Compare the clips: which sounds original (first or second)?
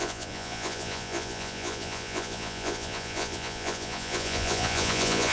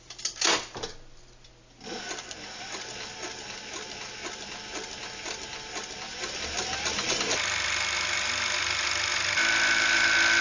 second